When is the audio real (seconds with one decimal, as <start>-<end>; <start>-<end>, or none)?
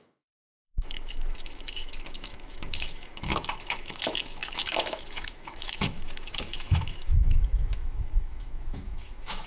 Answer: none